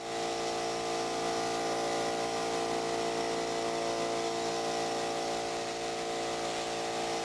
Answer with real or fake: real